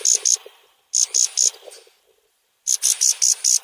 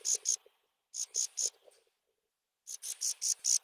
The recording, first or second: second